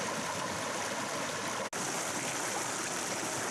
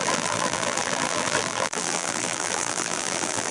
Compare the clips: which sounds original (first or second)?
first